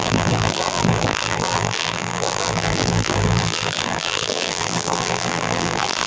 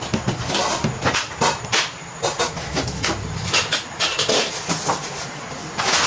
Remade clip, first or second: first